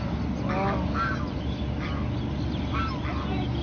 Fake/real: real